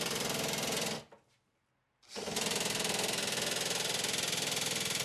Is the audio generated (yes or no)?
no